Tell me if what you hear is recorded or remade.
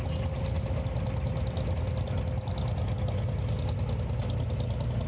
recorded